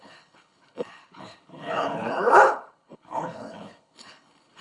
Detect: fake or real fake